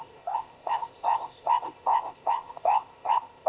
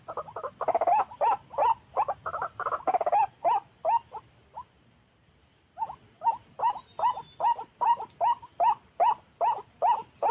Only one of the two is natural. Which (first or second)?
second